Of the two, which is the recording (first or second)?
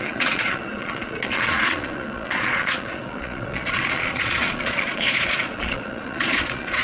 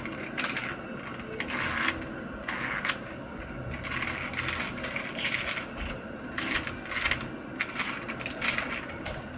second